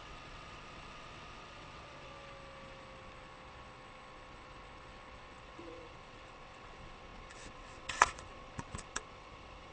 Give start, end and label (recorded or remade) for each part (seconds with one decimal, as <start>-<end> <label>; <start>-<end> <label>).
0.0-2.1 remade; 2.1-5.4 recorded; 5.4-9.7 remade